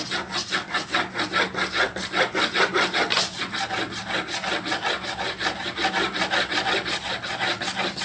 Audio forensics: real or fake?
real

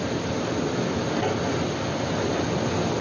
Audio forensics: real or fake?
real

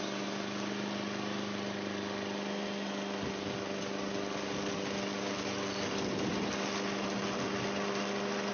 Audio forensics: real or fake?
real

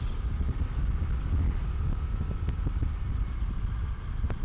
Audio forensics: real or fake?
real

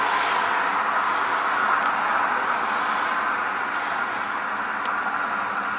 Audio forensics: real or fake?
real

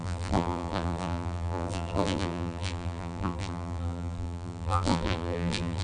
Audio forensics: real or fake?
fake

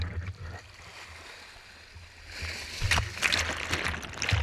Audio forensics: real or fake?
real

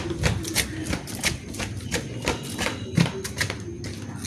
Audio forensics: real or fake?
real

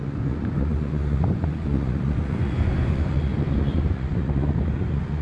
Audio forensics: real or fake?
fake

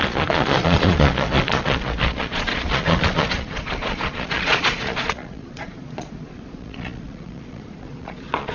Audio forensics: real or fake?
fake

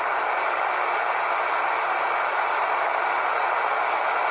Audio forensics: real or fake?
real